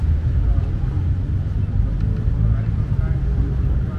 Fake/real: real